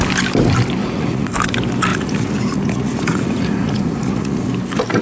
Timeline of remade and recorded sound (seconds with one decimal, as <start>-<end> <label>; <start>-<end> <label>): 0.0-0.8 recorded; 0.8-1.3 remade; 1.3-1.9 recorded; 1.9-4.5 remade; 4.5-5.0 recorded